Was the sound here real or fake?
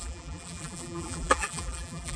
fake